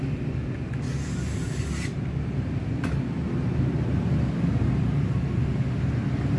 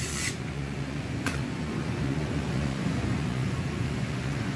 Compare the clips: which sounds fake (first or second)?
second